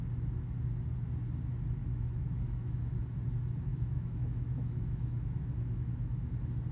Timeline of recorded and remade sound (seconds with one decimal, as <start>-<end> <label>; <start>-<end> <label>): 0.0-1.8 recorded; 1.8-3.0 remade; 3.0-3.7 recorded; 3.7-6.1 remade; 6.1-6.7 recorded